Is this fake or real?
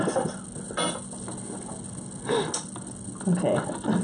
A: real